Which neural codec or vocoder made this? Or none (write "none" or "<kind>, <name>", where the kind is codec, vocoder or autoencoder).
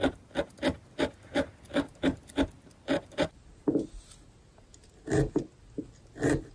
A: none